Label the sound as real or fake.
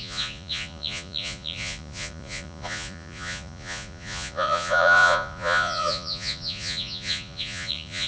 fake